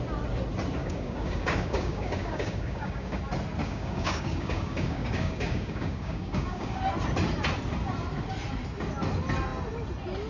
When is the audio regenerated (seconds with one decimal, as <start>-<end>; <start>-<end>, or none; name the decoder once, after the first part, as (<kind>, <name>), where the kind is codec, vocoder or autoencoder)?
0.8-3.2 (codec, DAC); 3.6-6.8